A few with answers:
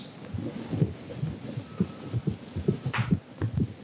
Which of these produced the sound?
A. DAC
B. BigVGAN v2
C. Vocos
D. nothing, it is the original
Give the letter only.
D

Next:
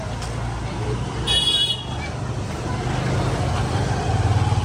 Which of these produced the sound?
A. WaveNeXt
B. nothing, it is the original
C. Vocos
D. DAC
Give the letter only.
B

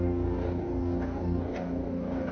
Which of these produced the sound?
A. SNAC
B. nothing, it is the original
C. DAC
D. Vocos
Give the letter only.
C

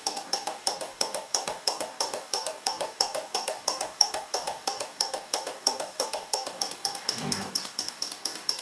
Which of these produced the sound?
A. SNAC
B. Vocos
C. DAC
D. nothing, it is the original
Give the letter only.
C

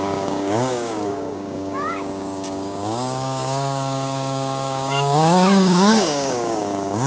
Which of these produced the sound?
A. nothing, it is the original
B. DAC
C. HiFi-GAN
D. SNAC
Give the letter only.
B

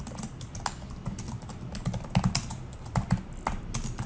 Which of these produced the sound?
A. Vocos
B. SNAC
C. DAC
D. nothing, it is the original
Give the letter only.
D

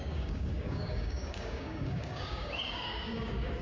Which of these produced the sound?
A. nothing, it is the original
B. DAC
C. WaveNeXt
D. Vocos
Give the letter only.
B